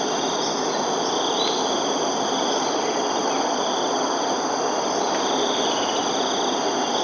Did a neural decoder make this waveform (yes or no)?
no